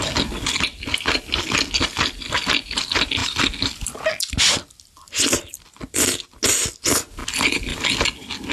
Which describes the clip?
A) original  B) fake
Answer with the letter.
A